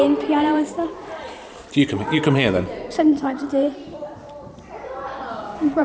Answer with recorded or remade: remade